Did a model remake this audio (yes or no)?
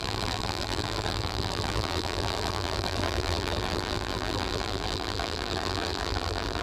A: yes